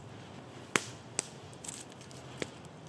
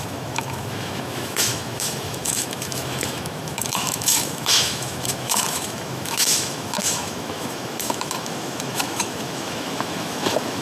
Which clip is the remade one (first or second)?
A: second